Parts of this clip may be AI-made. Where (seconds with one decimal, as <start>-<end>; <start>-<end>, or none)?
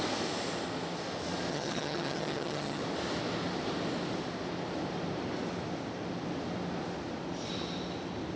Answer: 1.5-2.8